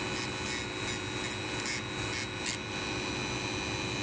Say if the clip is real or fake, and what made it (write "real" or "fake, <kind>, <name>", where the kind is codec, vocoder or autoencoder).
real